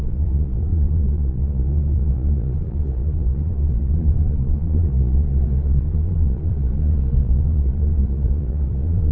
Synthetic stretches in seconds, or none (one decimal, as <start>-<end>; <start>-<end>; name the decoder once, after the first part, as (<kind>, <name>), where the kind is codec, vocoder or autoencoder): 0.0-9.1 (vocoder, Vocos)

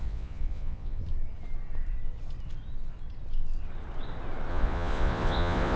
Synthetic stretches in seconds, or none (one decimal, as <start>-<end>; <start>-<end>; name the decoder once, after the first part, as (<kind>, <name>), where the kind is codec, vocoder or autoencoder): 0.0-1.0 (vocoder, Vocos); 4.5-5.8

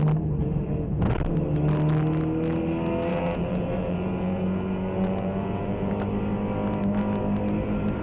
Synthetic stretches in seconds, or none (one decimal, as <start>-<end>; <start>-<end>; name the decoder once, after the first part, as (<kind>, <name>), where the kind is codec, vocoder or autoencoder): 0.4-1.1 (vocoder, Vocos); 3.1-5.9

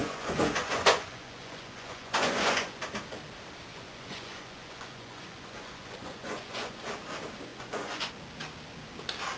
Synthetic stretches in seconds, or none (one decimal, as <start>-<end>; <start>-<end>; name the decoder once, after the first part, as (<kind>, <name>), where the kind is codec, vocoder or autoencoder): 0.0-2.8 (vocoder, Vocos); 3.7-6.8; 7.5-8.1

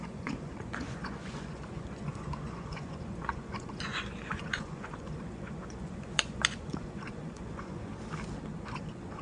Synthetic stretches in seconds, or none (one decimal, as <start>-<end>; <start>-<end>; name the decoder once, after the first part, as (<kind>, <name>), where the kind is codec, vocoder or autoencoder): 0.0-7.9 (vocoder, Vocos); 8.6-9.2

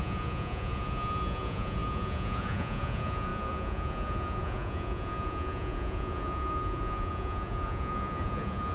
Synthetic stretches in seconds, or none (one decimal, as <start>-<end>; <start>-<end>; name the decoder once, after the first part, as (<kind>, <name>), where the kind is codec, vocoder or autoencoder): 0.0-8.7 (vocoder, Vocos)

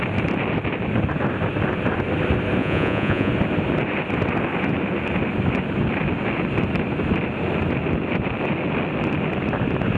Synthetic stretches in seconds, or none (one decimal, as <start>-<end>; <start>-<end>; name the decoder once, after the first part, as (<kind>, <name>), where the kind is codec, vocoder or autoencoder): 2.6-3.3 (vocoder, Vocos)

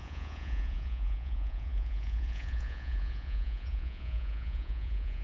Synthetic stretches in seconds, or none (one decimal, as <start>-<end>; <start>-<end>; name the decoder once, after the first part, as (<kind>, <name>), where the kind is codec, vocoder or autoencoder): 0.0-5.2 (vocoder, Vocos)